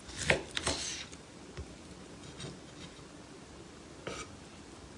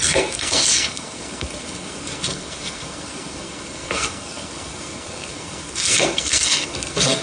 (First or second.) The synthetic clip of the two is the second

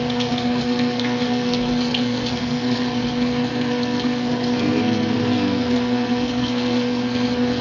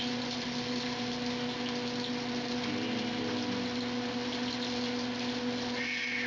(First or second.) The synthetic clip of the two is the first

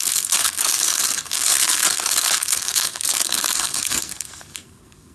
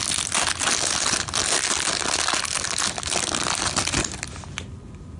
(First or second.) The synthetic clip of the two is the first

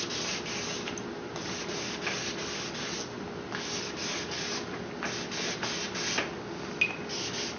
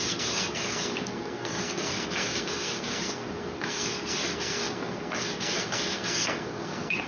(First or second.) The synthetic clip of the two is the second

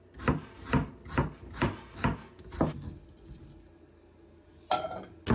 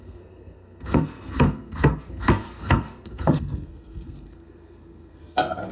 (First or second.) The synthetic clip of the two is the second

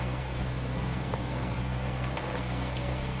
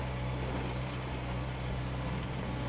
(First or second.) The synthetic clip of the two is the first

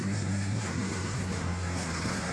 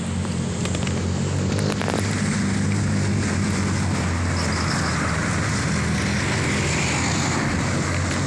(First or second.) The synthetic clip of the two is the first